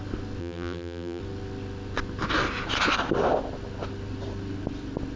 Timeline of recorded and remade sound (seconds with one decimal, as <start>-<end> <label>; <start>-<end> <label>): 0.0-0.4 recorded; 0.4-1.2 remade; 1.2-5.2 recorded